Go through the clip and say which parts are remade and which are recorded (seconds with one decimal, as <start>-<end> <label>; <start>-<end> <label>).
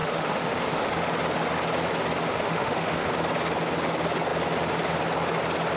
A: 0.0-0.9 remade; 0.9-2.3 recorded; 2.3-3.1 remade; 3.1-5.8 recorded